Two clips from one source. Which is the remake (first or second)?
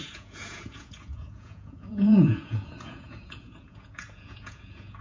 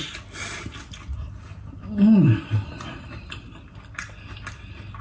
first